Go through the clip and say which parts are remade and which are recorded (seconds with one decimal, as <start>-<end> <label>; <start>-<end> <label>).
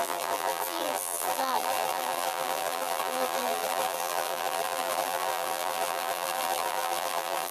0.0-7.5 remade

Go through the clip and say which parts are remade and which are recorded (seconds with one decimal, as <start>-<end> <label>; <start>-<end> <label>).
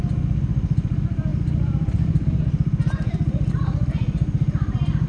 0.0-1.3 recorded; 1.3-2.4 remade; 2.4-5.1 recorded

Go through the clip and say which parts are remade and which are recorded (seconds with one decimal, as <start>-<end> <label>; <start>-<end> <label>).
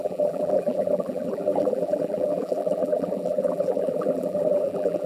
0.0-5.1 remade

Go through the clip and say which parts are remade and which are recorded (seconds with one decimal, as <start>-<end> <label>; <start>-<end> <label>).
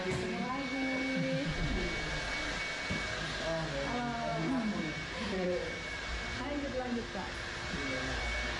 0.0-4.3 recorded; 4.3-8.2 remade; 8.2-8.6 recorded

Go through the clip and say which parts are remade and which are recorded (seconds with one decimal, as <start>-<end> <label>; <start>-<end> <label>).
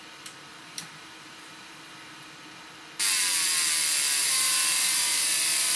0.0-0.5 recorded; 0.5-2.2 remade; 2.2-4.2 recorded; 4.2-5.8 remade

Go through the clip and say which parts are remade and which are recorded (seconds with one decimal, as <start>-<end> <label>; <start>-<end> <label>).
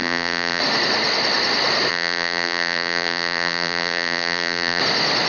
0.0-0.6 remade; 0.6-1.9 recorded; 1.9-4.8 remade; 4.8-5.3 recorded